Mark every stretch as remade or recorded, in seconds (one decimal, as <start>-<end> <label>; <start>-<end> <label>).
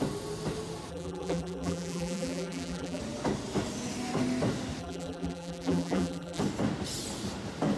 0.0-0.9 recorded; 0.9-3.0 remade; 3.0-4.8 recorded; 4.8-6.4 remade; 6.4-7.8 recorded